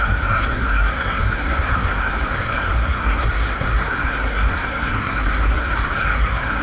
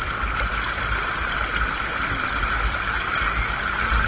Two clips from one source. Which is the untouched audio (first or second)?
second